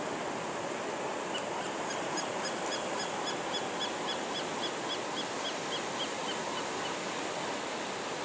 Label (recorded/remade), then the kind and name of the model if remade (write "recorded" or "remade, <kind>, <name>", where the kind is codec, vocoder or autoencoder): recorded